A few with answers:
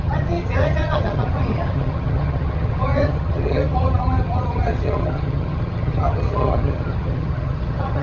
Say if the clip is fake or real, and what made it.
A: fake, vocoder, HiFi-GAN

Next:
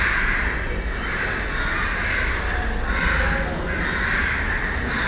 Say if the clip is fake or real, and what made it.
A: real